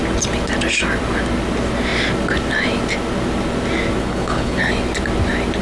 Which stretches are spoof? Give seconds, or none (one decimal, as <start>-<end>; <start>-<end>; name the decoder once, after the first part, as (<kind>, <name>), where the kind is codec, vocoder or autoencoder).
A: 4.0-4.7 (codec, HILCodec)